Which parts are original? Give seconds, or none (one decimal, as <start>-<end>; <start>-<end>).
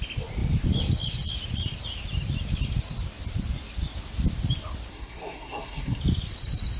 0.0-4.9; 6.0-6.8